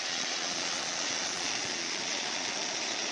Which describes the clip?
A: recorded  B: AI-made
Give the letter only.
B